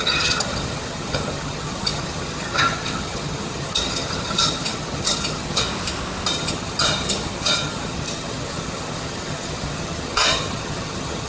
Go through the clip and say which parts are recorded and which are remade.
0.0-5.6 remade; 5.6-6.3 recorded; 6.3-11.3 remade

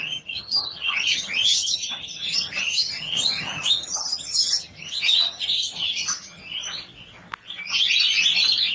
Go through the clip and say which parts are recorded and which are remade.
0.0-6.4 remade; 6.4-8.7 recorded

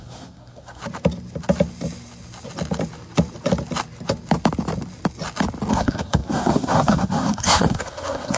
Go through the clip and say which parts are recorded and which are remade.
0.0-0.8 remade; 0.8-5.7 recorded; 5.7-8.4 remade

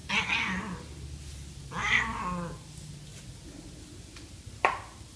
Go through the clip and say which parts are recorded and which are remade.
0.0-5.2 recorded

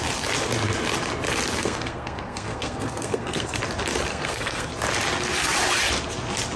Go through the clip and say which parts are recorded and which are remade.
0.0-1.6 recorded; 1.6-3.6 remade; 3.6-4.1 recorded; 4.1-4.7 remade; 4.7-6.6 recorded